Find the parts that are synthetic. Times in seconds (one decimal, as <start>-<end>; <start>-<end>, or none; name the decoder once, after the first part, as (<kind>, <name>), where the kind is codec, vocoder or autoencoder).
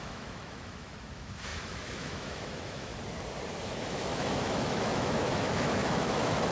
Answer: 0.0-2.9 (autoencoder, DAC-VAE); 3.9-6.5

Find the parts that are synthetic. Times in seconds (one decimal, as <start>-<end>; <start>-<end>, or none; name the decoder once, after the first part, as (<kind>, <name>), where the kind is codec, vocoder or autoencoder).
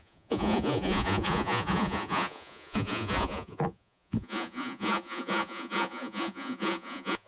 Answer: 0.0-7.3 (vocoder, Vocos)